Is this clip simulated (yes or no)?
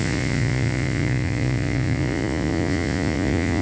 yes